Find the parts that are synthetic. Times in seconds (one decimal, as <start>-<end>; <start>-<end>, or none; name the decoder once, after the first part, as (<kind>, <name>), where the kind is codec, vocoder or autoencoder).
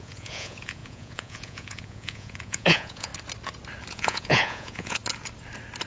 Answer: 0.0-3.1 (vocoder, Vocos); 3.9-5.0